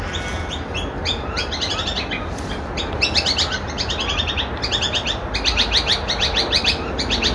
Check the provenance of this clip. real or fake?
real